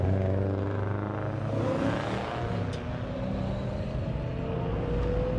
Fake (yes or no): no